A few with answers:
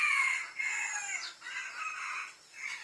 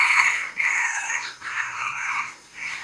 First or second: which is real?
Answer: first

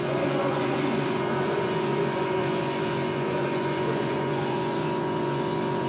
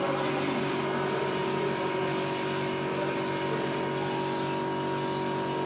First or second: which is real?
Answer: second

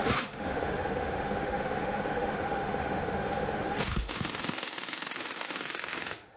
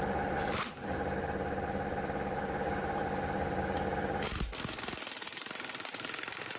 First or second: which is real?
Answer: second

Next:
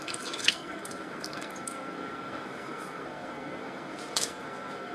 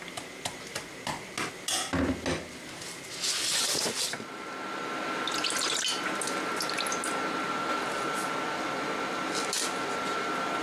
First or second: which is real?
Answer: second